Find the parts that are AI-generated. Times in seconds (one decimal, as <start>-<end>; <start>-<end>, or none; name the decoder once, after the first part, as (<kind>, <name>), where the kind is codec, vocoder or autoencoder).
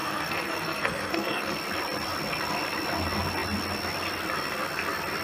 0.0-1.5 (codec, SNAC)